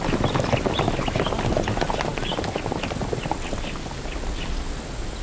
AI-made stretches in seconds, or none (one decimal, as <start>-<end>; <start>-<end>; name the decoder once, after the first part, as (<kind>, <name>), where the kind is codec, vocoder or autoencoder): none